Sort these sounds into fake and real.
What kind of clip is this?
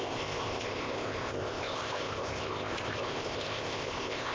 fake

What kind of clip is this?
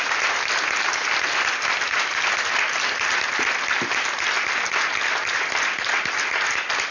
real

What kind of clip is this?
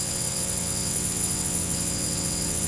fake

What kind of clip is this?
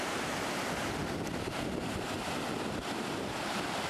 real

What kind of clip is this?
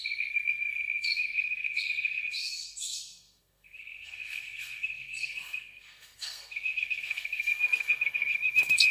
fake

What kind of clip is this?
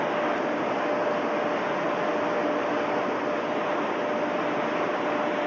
real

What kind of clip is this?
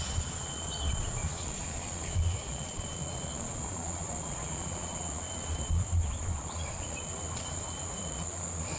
fake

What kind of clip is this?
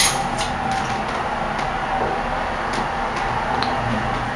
real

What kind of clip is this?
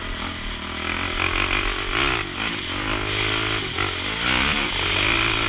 real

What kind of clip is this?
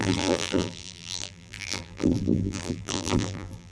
fake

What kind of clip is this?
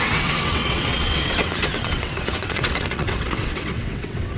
fake